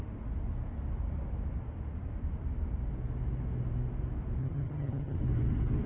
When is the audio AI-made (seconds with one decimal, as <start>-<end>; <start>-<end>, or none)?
4.4-5.2